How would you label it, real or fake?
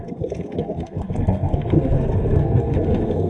fake